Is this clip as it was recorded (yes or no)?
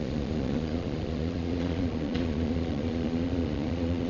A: no